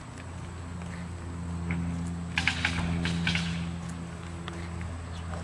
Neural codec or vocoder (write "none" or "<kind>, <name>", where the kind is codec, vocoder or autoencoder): none